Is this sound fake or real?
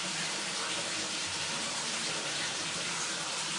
fake